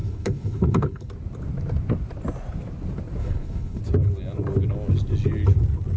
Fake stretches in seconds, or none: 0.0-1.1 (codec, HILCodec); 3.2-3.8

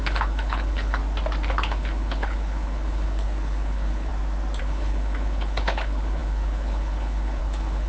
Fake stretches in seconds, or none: 0.0-1.0 (codec, HILCodec); 1.5-4.1; 4.6-7.9

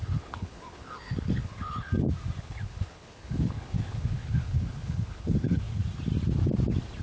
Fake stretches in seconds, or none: 0.0-1.9 (codec, HILCodec); 2.4-5.8

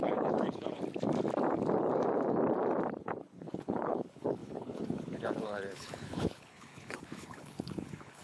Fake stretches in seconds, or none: 0.0-0.8 (codec, HILCodec); 3.0-8.2

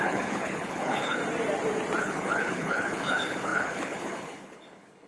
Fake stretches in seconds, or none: 0.0-1.2 (codec, HILCodec); 2.0-5.1

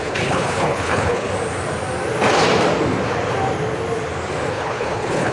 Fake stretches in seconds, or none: 0.0-1.3 (codec, HILCodec); 4.5-5.3

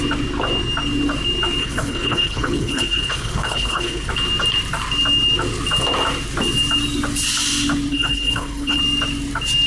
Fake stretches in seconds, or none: 1.6-4.1 (codec, HILCodec); 7.9-8.8

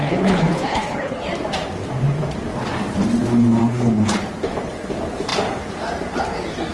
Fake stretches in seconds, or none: 0.0-1.2 (codec, HILCodec); 3.6-4.2